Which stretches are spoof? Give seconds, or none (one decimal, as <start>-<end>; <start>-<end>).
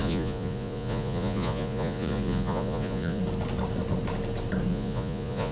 0.0-3.2; 4.7-5.5